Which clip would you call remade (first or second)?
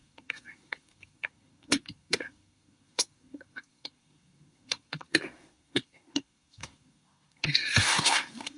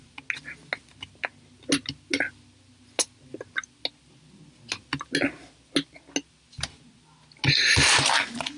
first